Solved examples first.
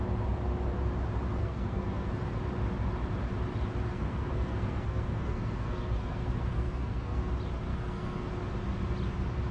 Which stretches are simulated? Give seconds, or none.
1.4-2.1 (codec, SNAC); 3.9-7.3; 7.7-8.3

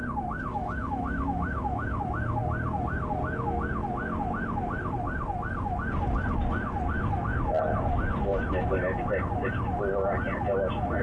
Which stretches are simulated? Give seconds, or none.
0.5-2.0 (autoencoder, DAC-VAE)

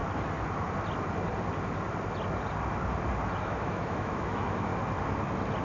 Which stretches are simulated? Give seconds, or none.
3.4-4.7 (autoencoder, DAC-VAE)

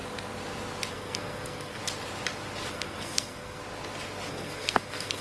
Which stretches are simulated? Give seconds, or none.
0.9-1.8 (codec, SNAC); 2.7-3.6; 4.3-5.2